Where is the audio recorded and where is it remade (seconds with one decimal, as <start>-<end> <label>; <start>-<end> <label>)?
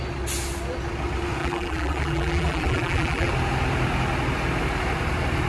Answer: 0.0-1.4 recorded; 1.4-3.3 remade; 3.3-5.5 recorded